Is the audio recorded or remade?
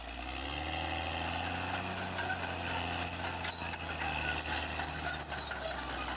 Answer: recorded